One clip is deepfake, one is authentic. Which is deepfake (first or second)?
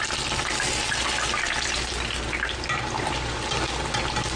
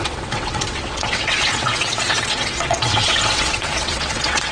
second